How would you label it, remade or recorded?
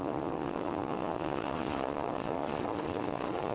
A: remade